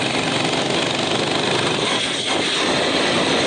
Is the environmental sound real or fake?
real